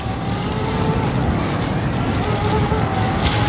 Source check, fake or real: real